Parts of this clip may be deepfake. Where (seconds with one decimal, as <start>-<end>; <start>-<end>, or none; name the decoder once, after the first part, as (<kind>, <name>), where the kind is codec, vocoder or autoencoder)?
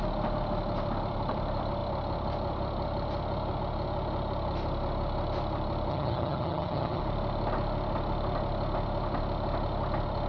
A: 5.9-7.0 (vocoder, HiFi-GAN)